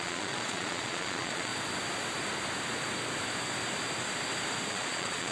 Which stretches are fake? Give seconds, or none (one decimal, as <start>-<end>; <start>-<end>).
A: 0.0-1.5; 4.7-5.3